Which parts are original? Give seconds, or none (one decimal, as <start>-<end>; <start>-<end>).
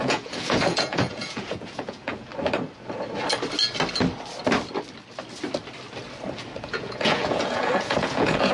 2.3-6.6